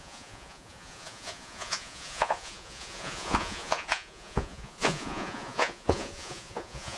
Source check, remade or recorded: remade